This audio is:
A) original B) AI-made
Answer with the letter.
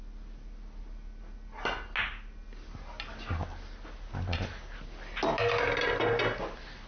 A